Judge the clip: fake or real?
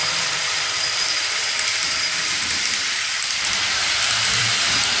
fake